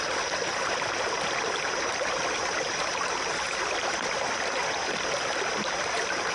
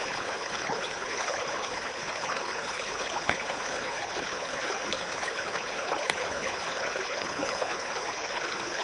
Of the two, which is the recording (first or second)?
first